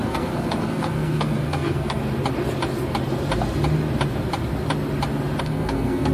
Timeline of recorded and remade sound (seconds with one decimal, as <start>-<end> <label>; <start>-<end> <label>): 0.0-2.0 remade; 2.0-5.4 recorded; 5.4-6.1 remade